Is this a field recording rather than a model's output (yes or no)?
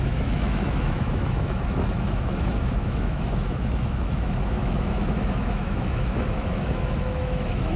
no